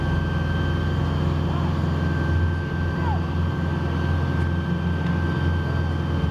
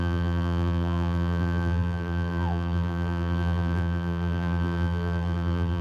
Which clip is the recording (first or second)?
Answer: first